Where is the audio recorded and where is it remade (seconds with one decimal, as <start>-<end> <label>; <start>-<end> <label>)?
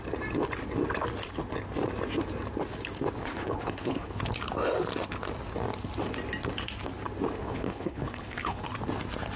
0.0-3.2 recorded; 3.2-4.2 remade; 4.2-7.4 recorded; 7.4-8.6 remade; 8.6-9.4 recorded